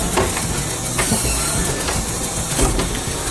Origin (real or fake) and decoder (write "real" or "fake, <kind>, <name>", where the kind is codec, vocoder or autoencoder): real